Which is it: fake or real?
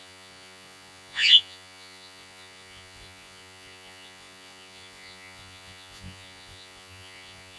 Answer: fake